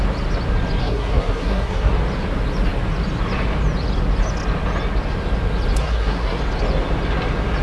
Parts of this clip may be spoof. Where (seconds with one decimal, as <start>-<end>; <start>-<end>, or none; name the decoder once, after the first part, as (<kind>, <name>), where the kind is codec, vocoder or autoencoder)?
0.8-1.9 (codec, SNAC); 5.8-6.4